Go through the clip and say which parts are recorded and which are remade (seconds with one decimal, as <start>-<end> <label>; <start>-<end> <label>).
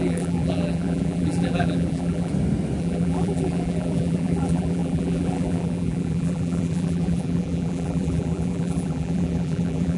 0.0-2.3 remade; 2.3-2.8 recorded; 2.8-10.0 remade